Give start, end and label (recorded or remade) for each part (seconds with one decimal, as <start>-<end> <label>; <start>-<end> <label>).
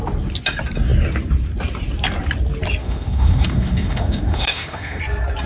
0.0-2.8 recorded; 2.8-5.0 remade; 5.0-5.5 recorded